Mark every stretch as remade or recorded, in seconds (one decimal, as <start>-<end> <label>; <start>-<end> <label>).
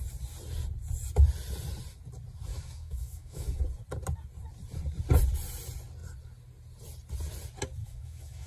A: 0.0-2.5 recorded; 2.5-3.6 remade; 3.6-7.8 recorded; 7.8-8.5 remade